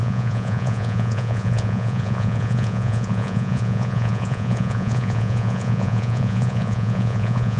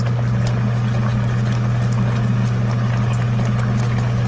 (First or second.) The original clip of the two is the second